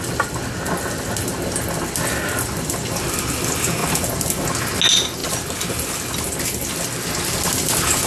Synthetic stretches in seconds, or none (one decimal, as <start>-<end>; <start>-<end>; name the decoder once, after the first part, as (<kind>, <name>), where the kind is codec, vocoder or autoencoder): none